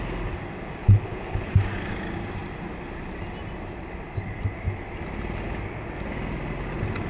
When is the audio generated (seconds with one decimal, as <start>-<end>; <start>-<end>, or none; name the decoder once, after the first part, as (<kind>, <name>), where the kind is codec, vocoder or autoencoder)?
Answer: 0.8-1.5 (codec, HILCodec)